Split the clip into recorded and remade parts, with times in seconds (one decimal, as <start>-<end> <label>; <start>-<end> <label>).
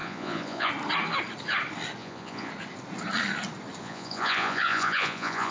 0.0-0.7 remade; 0.7-2.0 recorded; 2.0-2.5 remade; 2.5-3.8 recorded; 3.8-5.5 remade